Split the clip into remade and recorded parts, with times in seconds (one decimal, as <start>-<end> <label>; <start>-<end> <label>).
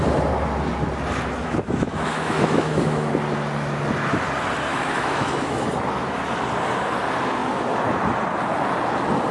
0.0-1.4 recorded; 1.4-3.1 remade; 3.1-4.7 recorded; 4.7-5.7 remade; 5.7-9.3 recorded